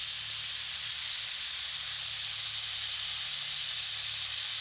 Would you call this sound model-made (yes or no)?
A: no